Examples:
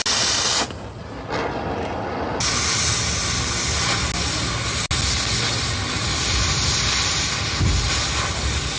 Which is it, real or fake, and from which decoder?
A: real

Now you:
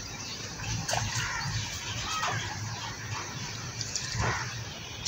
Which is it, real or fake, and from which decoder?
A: fake, vocoder, BigVGAN v2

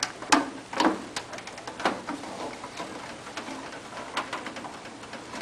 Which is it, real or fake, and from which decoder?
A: real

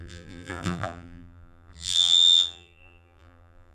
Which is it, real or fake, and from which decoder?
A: fake, vocoder, BigVGAN v2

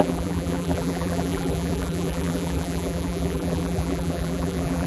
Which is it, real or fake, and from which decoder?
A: fake, vocoder, BigVGAN v2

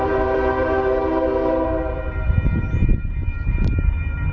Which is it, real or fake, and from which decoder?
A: fake, vocoder, BigVGAN v2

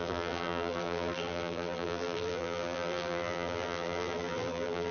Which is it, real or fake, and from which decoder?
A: fake, vocoder, BigVGAN v2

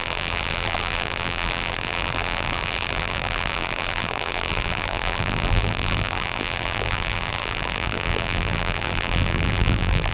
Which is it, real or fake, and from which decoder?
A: fake, vocoder, BigVGAN v2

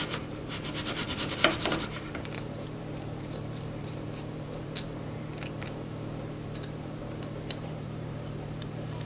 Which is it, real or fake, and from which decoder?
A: fake, vocoder, BigVGAN v2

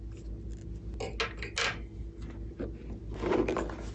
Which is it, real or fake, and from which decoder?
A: real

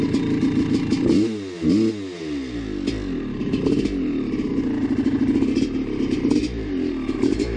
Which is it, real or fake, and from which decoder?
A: real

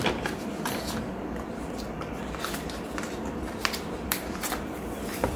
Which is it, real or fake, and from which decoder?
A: fake, vocoder, BigVGAN v2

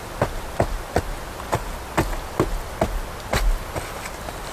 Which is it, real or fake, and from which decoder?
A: real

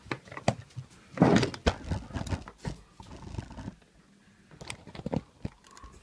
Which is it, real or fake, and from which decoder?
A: real